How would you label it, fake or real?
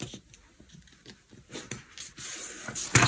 real